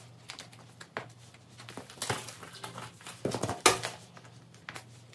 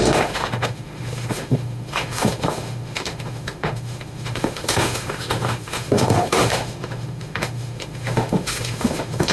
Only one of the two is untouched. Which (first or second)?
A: first